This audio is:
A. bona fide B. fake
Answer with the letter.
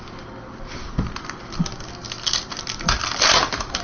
A